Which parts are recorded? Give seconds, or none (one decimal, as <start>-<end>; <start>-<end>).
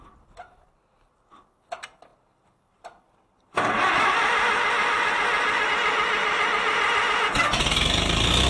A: 0.0-8.5